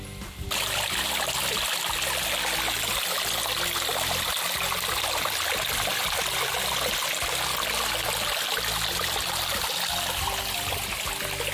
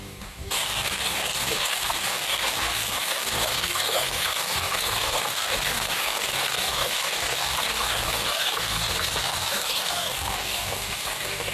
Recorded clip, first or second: first